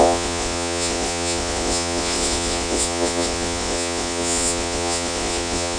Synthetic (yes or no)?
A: yes